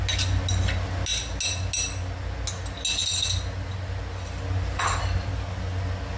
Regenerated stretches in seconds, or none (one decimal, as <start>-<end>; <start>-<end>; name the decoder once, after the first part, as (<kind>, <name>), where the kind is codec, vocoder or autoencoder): none